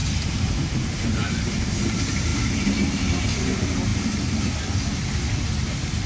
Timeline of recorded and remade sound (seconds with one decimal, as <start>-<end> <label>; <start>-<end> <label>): 0.0-2.3 remade; 2.3-3.4 recorded; 3.4-6.1 remade